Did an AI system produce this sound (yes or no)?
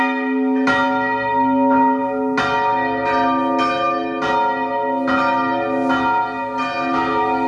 no